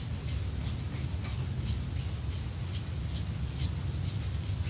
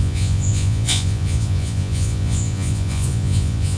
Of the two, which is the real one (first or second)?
first